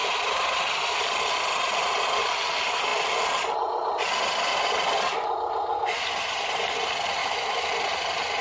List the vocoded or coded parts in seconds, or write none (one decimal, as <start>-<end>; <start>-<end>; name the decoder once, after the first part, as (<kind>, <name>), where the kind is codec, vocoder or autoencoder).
7.2-7.7 (autoencoder, DAC-VAE)